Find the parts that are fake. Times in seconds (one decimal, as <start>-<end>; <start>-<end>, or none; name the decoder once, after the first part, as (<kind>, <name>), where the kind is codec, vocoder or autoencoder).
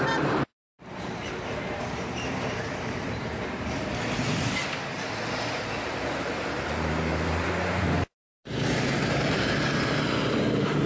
0.0-4.6 (vocoder, BigVGAN v2); 5.6-10.9